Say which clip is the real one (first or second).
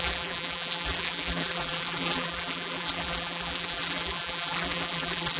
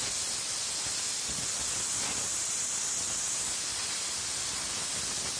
second